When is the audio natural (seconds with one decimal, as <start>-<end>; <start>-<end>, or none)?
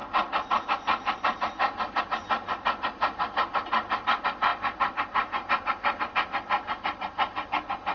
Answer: 0.0-7.9